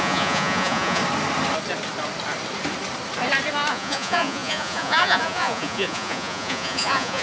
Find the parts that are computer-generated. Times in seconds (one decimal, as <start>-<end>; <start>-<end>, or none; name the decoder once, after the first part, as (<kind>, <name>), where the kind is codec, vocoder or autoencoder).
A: 0.0-1.0 (vocoder, Vocos); 3.7-7.2